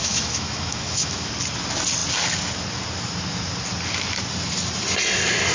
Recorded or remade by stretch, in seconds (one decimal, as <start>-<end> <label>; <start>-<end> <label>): 0.0-1.3 remade; 1.3-5.5 recorded